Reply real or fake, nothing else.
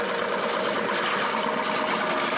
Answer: real